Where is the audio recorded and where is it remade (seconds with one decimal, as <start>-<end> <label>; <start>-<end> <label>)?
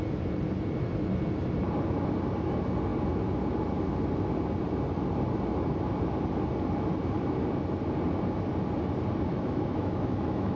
0.0-9.3 recorded; 9.3-10.6 remade